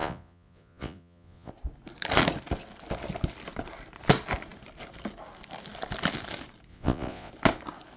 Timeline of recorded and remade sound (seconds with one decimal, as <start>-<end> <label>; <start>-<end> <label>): 0.0-1.5 remade; 1.5-6.7 recorded; 6.7-7.3 remade; 7.3-8.0 recorded